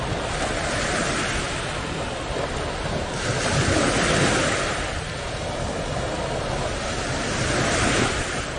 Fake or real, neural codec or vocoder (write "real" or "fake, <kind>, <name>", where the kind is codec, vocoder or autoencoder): real